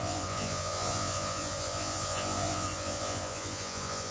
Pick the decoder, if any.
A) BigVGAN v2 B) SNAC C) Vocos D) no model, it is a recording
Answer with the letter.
C